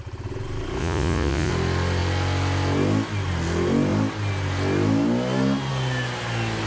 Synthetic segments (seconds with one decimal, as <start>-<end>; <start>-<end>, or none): 0.8-1.5